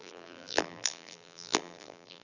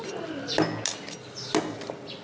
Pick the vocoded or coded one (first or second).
first